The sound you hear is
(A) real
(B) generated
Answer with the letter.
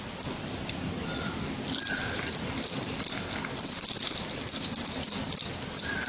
A